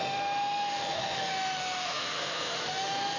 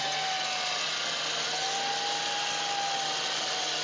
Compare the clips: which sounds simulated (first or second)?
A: first